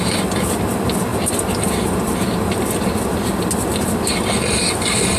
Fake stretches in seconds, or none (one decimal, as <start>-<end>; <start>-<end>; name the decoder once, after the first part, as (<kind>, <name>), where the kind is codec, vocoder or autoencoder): none